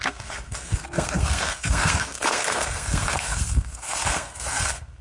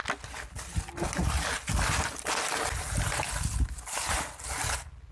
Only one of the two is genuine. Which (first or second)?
second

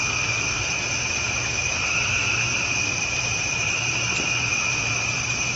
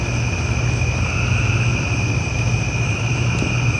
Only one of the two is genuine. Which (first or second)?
second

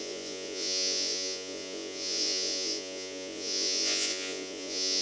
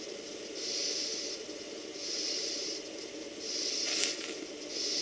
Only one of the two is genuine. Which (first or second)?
second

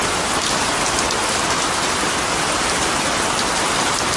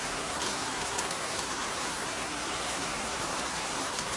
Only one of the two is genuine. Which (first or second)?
first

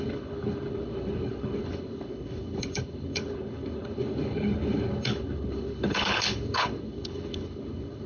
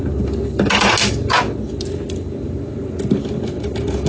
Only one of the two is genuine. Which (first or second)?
second